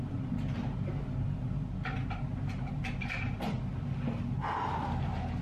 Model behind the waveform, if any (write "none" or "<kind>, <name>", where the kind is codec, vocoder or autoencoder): none